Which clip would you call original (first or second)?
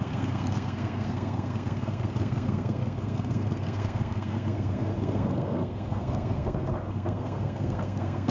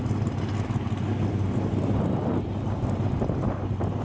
second